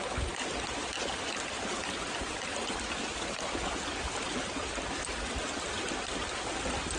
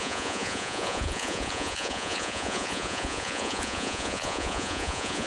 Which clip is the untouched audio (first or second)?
first